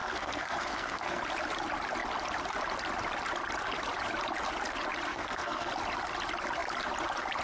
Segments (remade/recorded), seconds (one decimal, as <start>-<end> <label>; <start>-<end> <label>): 0.0-1.2 remade; 1.2-5.1 recorded; 5.1-5.7 remade; 5.7-7.4 recorded